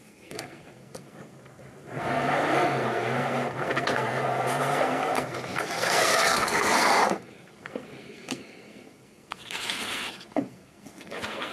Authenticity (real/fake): fake